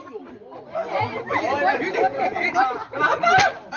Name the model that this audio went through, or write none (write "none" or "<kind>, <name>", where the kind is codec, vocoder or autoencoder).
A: none